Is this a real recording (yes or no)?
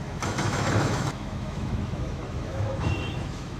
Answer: no